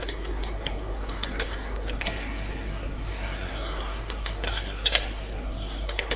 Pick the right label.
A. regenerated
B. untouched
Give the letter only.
A